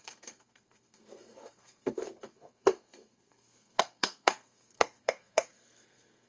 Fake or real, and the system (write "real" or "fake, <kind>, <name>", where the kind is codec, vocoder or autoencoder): fake, codec, SNAC